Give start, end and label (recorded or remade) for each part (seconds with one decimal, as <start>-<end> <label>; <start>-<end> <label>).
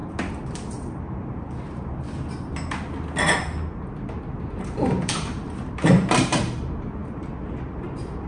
0.0-4.5 recorded; 4.5-8.3 remade